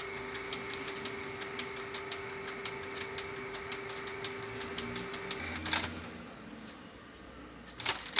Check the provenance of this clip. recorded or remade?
recorded